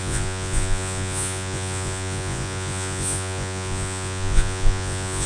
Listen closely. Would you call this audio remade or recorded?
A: remade